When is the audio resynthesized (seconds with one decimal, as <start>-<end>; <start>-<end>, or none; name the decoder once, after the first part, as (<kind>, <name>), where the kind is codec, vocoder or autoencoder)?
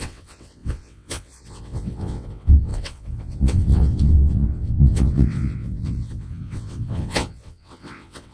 0.0-8.3 (vocoder, WaveNeXt)